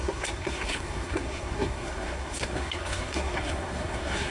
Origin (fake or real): fake